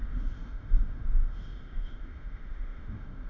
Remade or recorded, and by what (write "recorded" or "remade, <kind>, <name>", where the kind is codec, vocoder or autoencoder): remade, autoencoder, DAC-VAE